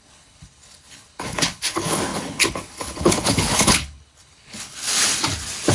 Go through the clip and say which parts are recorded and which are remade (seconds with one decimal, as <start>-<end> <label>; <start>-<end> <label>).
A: 0.0-5.1 remade; 5.1-5.7 recorded